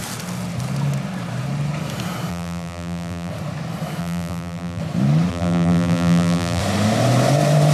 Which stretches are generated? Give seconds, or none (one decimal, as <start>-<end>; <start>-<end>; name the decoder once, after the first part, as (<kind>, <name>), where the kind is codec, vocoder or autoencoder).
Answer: 2.3-3.3 (vocoder, BigVGAN v2); 4.0-4.8; 5.3-6.6